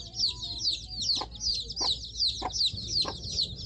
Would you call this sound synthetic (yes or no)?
no